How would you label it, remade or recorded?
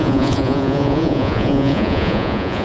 remade